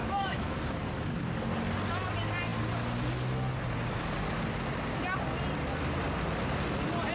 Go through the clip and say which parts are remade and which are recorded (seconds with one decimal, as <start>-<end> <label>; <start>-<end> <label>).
0.0-0.6 remade; 0.6-7.1 recorded

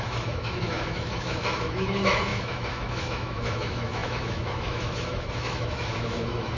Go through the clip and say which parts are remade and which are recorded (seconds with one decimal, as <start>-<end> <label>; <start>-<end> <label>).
0.0-6.6 remade

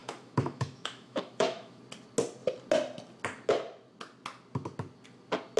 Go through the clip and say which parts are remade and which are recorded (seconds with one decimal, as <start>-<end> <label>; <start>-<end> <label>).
0.0-1.8 remade; 1.8-5.6 recorded

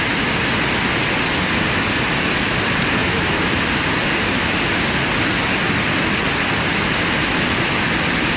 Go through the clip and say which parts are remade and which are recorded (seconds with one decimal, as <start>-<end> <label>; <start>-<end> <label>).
0.0-3.0 recorded; 3.0-3.5 remade; 3.5-8.4 recorded

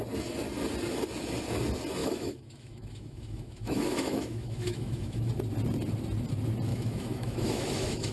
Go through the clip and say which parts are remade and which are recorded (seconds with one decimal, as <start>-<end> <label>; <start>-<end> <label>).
0.0-2.0 recorded; 2.0-5.3 remade; 5.3-6.7 recorded; 6.7-8.1 remade

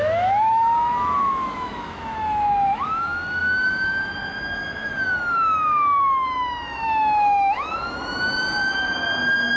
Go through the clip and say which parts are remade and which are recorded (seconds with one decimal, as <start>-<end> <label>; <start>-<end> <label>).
0.0-9.6 remade

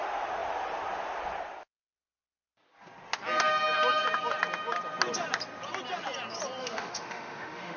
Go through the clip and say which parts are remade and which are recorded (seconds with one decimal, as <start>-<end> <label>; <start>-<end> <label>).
0.0-6.6 recorded; 6.6-7.8 remade